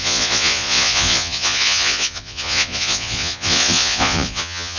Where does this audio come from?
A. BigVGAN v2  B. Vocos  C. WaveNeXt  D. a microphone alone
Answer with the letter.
B